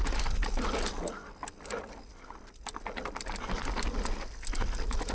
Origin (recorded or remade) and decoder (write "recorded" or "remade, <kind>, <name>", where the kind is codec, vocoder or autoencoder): recorded